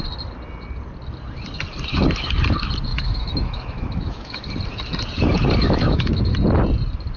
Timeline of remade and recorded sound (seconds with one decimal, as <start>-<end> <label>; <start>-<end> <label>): 0.0-2.9 recorded; 2.9-4.5 remade; 4.5-5.6 recorded; 5.6-6.3 remade; 6.3-7.2 recorded